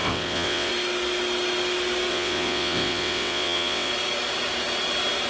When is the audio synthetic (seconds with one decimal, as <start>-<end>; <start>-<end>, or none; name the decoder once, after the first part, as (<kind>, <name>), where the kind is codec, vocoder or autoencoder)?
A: 0.0-0.7 (vocoder, WaveNeXt); 2.1-3.9